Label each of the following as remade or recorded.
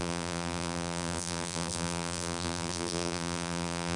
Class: remade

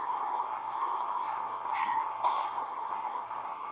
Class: remade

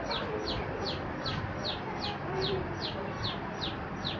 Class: remade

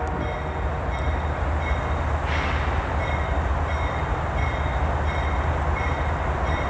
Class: recorded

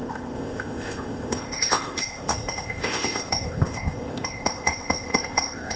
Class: remade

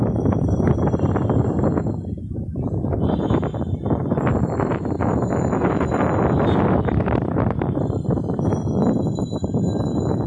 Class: remade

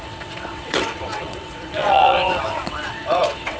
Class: remade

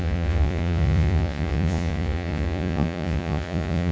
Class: remade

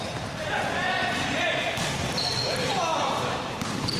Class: remade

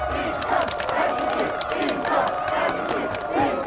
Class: recorded